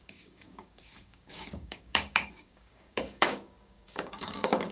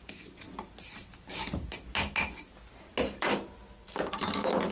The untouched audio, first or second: second